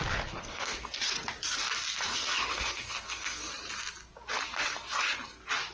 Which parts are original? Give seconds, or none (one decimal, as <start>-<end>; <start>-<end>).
0.0-0.4; 1.0-2.1; 3.5-5.7